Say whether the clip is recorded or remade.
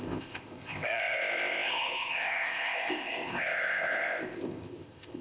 remade